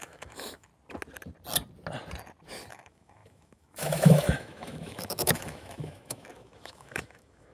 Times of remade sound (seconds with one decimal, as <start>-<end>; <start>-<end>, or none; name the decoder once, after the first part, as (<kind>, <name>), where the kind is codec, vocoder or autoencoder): 0.0-0.7 (autoencoder, DAC-VAE); 2.7-7.5